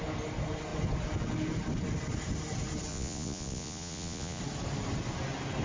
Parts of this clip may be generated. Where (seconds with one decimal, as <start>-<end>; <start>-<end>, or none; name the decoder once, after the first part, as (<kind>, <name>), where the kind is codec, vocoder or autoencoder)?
2.9-4.4 (vocoder, Vocos)